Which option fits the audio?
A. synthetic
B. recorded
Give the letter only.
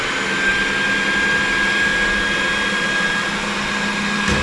B